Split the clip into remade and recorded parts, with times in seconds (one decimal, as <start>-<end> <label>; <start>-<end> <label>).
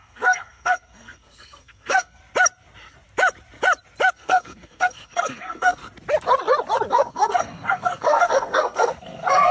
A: 0.0-2.2 remade; 2.2-4.1 recorded; 4.1-5.8 remade; 5.8-6.9 recorded; 6.9-9.5 remade